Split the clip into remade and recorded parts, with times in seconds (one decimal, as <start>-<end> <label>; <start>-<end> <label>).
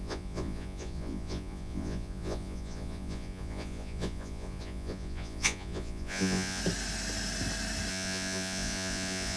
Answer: 0.0-6.6 remade; 6.6-7.9 recorded; 7.9-9.4 remade